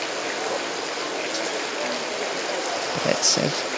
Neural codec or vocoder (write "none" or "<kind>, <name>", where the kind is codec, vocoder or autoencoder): none